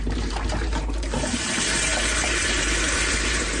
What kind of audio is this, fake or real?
fake